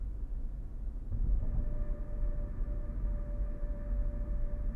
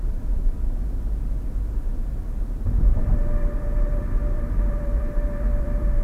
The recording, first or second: first